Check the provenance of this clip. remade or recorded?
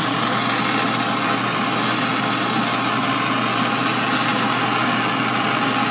recorded